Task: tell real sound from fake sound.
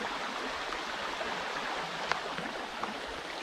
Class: real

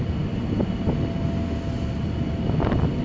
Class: real